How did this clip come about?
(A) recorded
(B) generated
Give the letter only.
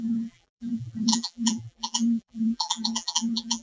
B